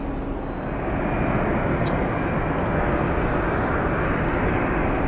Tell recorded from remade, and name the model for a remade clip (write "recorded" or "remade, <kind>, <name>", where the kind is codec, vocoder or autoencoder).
recorded